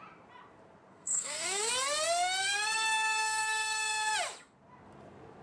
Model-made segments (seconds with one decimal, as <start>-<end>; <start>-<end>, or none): 0.9-1.7; 2.4-4.1